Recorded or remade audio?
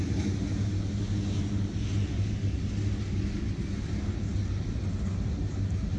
recorded